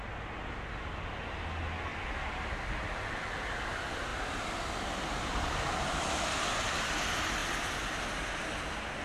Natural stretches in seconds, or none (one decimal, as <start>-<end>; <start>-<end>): 0.0-9.0